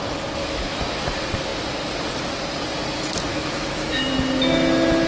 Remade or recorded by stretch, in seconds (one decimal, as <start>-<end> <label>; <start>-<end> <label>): 0.0-0.4 recorded; 0.4-1.0 remade; 1.0-3.3 recorded; 3.3-4.1 remade; 4.1-5.1 recorded

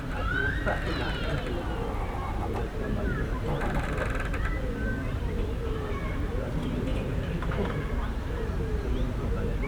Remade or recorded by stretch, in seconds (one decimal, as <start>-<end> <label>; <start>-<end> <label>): 0.0-2.7 recorded; 2.7-4.0 remade; 4.0-6.9 recorded; 6.9-7.5 remade; 7.5-9.7 recorded

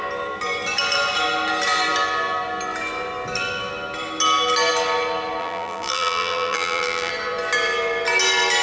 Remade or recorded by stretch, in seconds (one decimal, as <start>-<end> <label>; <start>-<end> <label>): 0.0-5.4 recorded; 5.4-7.1 remade; 7.1-8.6 recorded